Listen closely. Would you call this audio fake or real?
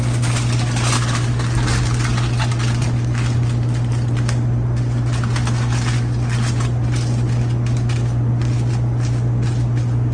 real